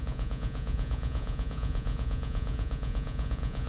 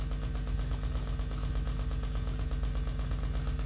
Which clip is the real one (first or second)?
second